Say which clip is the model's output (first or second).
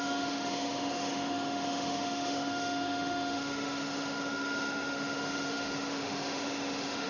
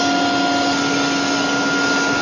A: first